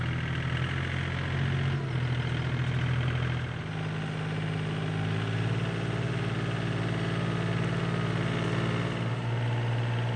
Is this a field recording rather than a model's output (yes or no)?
yes